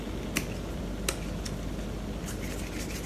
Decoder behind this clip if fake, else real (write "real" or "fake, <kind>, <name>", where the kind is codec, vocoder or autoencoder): real